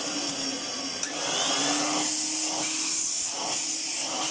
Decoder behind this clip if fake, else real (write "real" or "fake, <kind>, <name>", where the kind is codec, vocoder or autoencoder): real